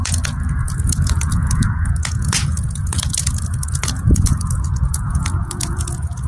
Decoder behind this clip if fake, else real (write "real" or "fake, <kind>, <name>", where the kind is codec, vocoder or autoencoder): fake, vocoder, Vocos